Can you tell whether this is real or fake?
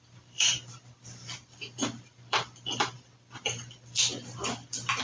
fake